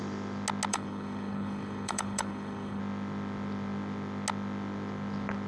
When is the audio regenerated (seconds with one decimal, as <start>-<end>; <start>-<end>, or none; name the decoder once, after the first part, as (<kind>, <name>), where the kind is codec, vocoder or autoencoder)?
0.7-2.8 (codec, HILCodec)